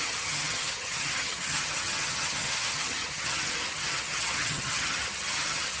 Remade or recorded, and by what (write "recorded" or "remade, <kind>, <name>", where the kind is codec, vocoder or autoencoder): remade, vocoder, HiFi-GAN